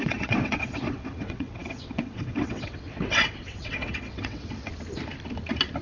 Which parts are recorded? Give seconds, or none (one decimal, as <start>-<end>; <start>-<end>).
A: 4.7-5.8